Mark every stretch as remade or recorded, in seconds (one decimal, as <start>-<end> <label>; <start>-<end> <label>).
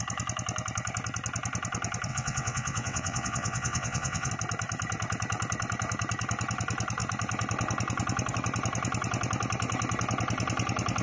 0.0-2.1 recorded; 2.1-4.3 remade; 4.3-11.0 recorded